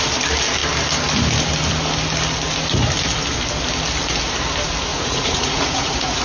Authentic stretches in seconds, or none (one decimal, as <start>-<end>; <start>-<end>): 0.0-4.9